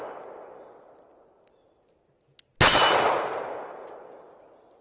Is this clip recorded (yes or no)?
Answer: yes